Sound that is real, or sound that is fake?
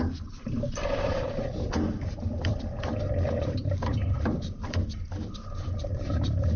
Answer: fake